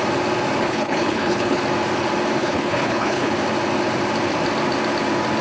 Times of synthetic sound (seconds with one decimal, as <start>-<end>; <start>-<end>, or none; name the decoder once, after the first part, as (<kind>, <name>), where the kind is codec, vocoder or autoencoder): 0.6-1.6 (codec, HILCodec); 2.4-3.3

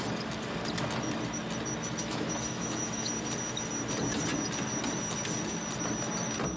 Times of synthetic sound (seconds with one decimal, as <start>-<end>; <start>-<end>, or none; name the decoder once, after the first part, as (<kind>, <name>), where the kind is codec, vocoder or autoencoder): 2.0-3.1 (autoencoder, DAC-VAE)

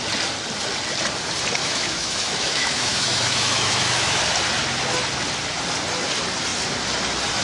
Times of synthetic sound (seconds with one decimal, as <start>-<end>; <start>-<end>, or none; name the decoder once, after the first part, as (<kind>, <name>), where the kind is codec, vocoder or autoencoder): 1.6-4.2 (autoencoder, DAC-VAE)

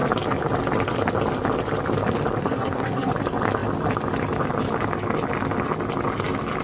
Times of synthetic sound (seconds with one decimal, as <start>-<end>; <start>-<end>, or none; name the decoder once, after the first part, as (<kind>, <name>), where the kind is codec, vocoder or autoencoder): 2.4-3.1 (codec, SNAC)

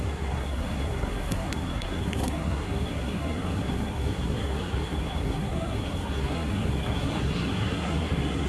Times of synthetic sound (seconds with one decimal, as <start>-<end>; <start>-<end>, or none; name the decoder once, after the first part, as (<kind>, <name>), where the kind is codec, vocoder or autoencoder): 0.0-8.5 (codec, SNAC)